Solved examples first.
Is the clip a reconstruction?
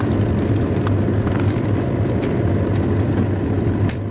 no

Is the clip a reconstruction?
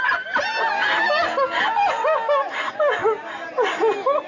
no